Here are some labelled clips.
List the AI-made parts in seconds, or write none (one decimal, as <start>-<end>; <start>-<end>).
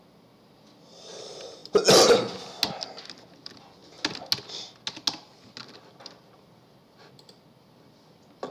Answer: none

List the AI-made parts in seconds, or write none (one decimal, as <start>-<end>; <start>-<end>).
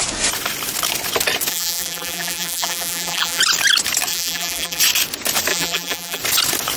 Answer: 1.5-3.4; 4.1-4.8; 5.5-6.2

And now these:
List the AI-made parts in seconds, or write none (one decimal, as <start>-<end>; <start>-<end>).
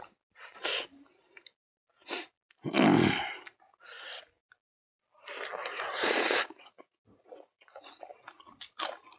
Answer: 5.6-7.9